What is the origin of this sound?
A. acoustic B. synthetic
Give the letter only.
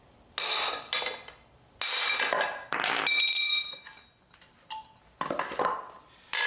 A